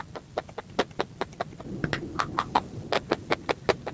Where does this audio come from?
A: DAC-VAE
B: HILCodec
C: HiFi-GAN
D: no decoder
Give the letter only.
D